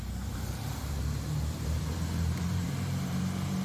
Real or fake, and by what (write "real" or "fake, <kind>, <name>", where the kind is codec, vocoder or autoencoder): fake, vocoder, BigVGAN v2